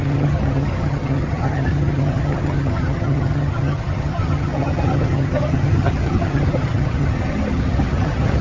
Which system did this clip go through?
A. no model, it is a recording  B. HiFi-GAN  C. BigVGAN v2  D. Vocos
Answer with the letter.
B